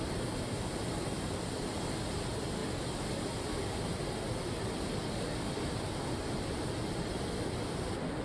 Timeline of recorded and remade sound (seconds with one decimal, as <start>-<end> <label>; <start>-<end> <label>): 0.0-8.2 recorded